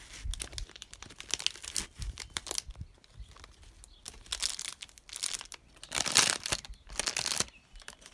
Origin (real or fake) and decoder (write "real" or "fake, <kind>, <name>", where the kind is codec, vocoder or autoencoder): real